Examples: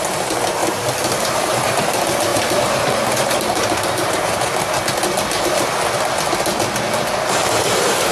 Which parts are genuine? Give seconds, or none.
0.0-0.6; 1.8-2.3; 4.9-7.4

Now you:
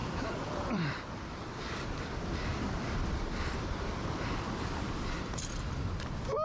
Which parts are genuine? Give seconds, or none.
1.1-2.5; 3.2-6.4

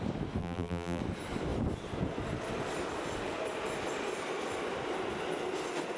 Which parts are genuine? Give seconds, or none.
0.0-0.4; 1.0-6.0

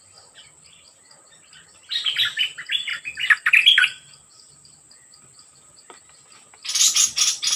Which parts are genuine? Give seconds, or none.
0.0-2.9; 6.0-7.6